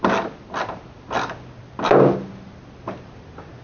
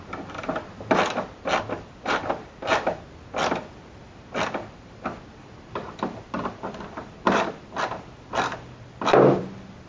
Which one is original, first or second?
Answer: first